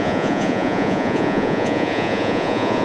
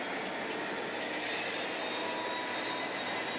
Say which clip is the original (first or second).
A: second